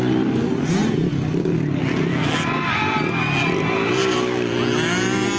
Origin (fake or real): real